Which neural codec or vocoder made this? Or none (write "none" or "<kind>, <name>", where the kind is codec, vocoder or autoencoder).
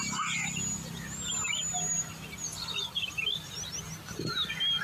none